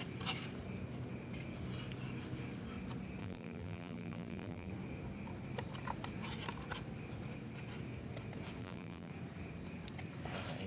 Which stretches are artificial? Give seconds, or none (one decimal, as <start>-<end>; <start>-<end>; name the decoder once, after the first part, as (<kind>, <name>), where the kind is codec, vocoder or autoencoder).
3.2-4.7 (vocoder, BigVGAN v2); 8.6-9.1